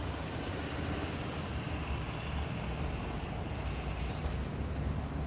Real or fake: real